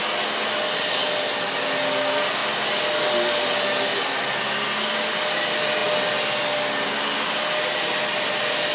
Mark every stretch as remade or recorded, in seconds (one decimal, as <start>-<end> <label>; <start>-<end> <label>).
0.0-8.7 recorded